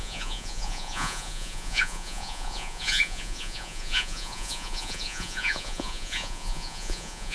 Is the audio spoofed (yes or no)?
yes